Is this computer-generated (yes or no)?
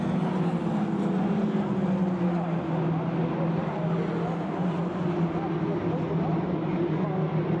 no